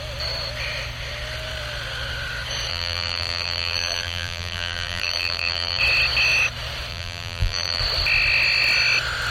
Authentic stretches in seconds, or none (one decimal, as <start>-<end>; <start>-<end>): 0.0-2.7; 5.8-6.9; 7.8-9.3